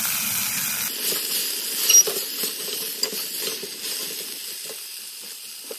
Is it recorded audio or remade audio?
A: recorded